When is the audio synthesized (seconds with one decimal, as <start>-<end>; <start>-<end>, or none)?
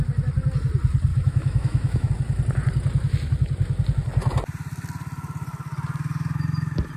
1.1-2.1